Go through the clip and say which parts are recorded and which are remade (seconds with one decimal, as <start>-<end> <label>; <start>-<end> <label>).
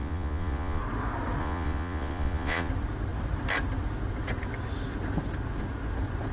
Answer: 0.0-0.8 remade; 0.8-1.4 recorded; 1.4-2.7 remade; 2.7-6.3 recorded